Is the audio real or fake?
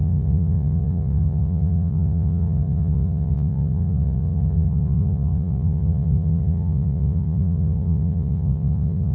fake